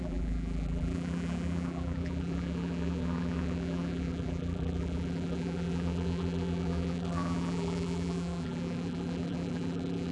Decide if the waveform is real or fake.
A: fake